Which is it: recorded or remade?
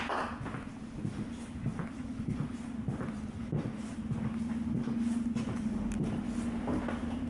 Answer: recorded